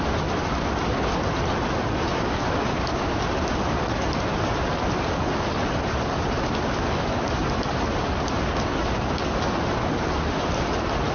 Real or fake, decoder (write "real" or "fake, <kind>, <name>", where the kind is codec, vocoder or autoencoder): real